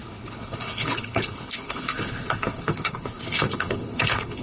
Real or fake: fake